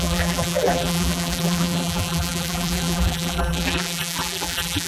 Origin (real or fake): fake